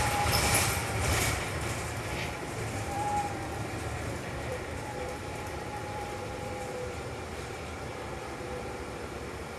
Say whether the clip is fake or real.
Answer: fake